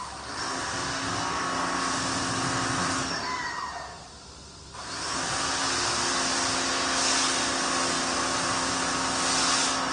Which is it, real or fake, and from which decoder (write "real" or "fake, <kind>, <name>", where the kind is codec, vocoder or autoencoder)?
real